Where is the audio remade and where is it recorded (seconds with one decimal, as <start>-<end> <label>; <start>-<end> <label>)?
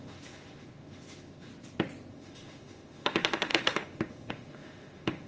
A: 0.0-1.5 remade; 1.5-2.1 recorded; 2.1-5.3 remade